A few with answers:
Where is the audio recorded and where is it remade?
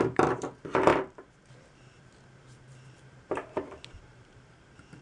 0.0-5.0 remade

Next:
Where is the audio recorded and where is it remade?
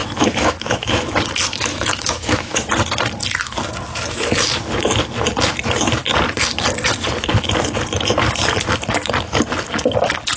0.0-1.2 remade; 1.2-1.7 recorded; 1.7-2.7 remade; 2.7-10.4 recorded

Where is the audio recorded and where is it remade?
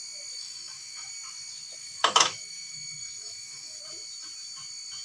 0.0-0.4 recorded; 0.4-1.1 remade; 1.1-1.8 recorded; 1.8-3.8 remade; 3.8-5.0 recorded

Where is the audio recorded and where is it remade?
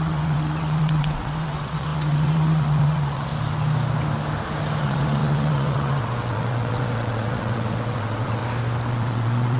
0.0-3.3 remade; 3.3-4.8 recorded; 4.8-8.4 remade; 8.4-8.9 recorded; 8.9-9.6 remade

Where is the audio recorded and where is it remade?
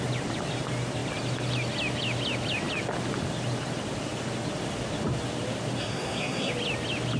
0.0-5.8 recorded; 5.8-6.5 remade; 6.5-7.2 recorded